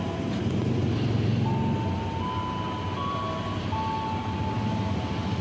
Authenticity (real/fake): real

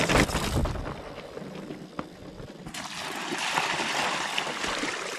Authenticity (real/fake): real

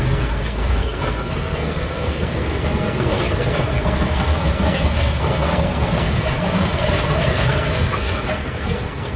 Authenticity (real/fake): fake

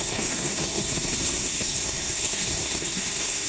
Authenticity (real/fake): fake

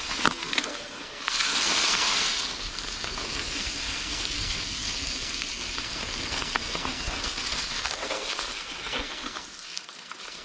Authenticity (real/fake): fake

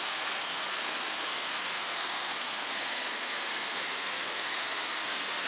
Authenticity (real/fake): fake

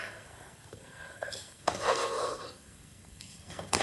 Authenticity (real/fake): fake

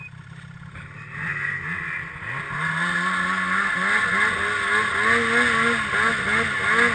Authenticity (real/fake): real